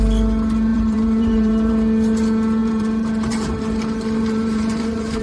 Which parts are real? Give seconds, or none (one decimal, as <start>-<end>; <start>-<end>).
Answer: 0.0-0.7; 1.7-2.6